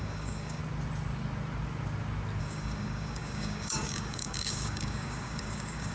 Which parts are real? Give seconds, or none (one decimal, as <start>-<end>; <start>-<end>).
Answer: 0.6-2.4